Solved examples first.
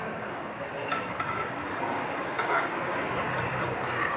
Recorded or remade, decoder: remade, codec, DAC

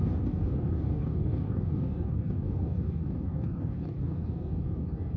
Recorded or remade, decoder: remade, codec, DAC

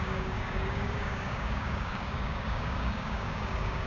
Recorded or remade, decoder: remade, codec, DAC